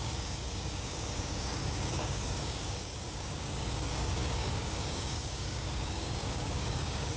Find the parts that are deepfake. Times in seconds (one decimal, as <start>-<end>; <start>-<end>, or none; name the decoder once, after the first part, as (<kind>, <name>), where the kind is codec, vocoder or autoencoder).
0.0-7.2 (codec, DAC)